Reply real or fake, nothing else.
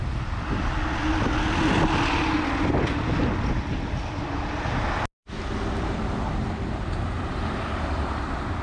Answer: real